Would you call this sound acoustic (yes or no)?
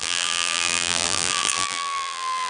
no